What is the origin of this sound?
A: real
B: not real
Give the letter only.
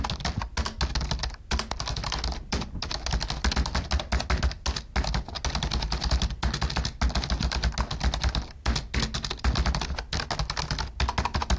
A